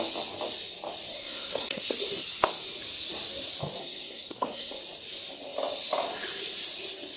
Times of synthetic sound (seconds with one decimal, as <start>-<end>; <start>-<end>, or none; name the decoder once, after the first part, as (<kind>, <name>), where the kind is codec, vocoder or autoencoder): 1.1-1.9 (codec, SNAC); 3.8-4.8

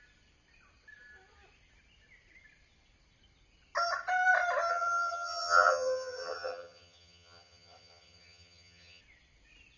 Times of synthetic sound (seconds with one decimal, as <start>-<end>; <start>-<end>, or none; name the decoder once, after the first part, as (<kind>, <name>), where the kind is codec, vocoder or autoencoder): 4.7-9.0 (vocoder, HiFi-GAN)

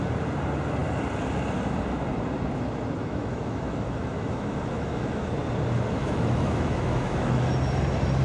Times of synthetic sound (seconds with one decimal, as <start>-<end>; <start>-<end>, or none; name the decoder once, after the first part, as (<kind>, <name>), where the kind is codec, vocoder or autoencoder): 3.0-5.3 (autoencoder, DAC-VAE); 6.0-7.4